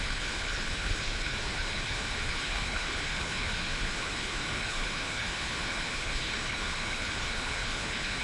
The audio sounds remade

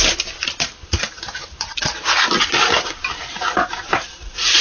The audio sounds recorded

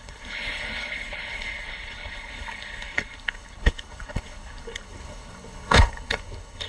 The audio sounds remade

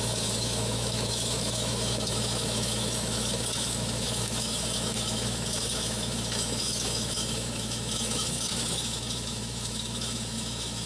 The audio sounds remade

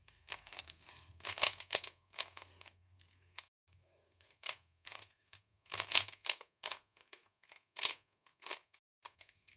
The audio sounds remade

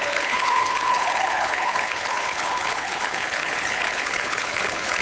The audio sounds remade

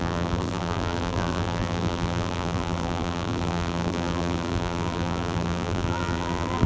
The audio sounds remade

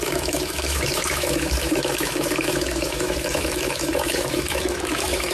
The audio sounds remade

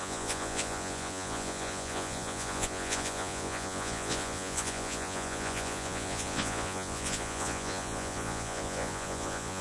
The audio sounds remade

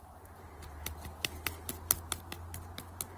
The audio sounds recorded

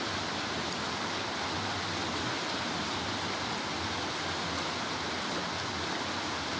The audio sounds recorded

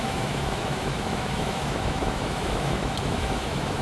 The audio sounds remade